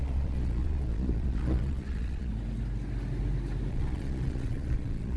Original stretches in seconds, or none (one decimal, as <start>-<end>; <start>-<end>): 2.3-3.7